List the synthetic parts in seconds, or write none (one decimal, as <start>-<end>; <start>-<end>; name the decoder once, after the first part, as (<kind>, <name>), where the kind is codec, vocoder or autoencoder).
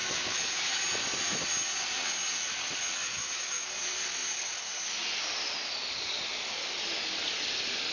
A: 0.0-0.8 (autoencoder, DAC-VAE); 3.0-3.7